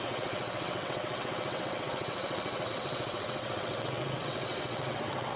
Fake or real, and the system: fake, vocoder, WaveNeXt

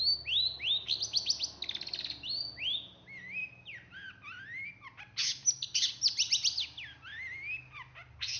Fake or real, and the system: real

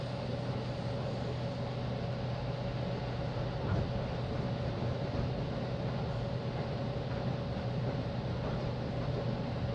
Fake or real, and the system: real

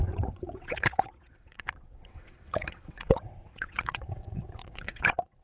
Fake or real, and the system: fake, vocoder, WaveNeXt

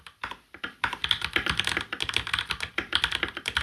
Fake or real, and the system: real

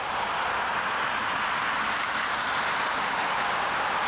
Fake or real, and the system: real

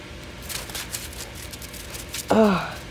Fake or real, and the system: real